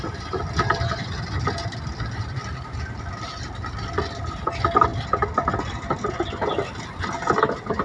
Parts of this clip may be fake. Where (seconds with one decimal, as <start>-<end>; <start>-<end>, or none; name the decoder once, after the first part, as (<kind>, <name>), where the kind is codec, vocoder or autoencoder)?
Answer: none